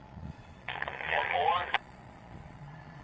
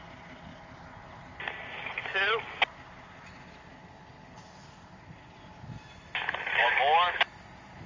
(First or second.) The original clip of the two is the second